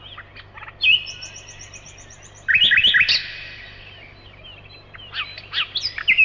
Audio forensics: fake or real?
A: real